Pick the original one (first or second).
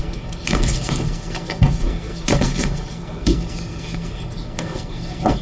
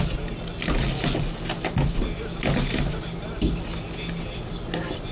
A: second